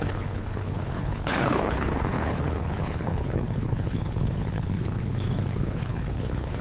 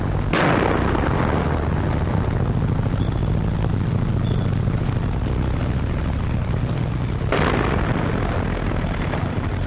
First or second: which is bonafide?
second